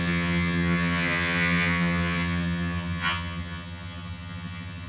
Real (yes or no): no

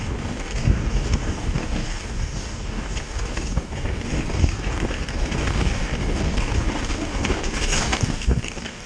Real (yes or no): no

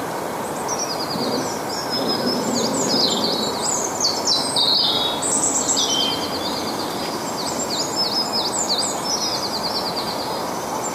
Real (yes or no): yes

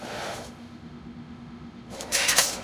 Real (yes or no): no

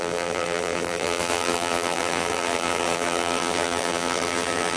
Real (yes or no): no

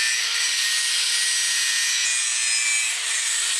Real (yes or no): yes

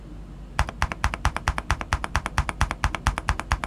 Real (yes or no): yes